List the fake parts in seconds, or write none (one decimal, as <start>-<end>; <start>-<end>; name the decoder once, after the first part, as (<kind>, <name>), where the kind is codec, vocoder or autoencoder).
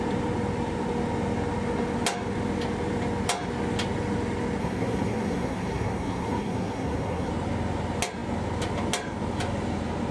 4.6-7.3 (codec, SNAC)